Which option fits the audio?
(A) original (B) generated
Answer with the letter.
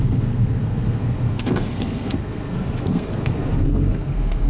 B